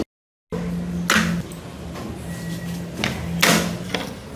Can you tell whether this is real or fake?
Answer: real